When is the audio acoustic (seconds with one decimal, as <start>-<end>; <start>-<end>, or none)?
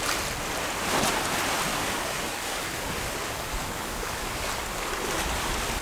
0.0-1.7; 4.5-5.8